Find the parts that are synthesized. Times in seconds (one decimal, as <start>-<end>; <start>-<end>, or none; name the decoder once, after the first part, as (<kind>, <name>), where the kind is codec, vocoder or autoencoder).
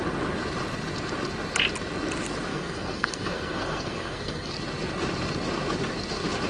2.5-4.5 (codec, SNAC)